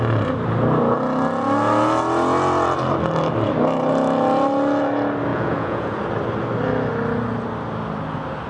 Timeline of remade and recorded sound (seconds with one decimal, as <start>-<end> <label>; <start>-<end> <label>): 0.0-5.3 recorded; 5.3-6.0 remade; 6.0-8.5 recorded